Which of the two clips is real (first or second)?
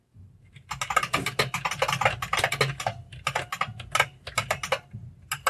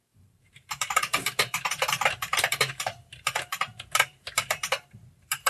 first